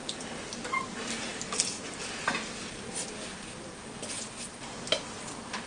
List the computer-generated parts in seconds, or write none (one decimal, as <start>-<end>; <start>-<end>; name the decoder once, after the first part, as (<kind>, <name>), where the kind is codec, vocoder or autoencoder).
none